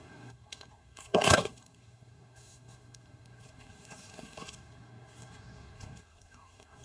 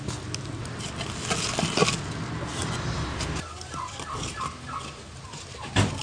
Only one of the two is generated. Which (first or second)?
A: first